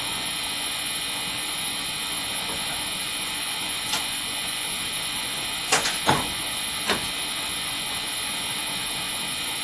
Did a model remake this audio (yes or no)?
yes